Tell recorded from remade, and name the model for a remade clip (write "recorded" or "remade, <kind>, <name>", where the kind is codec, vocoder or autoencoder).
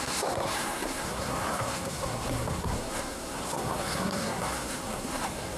remade, codec, SNAC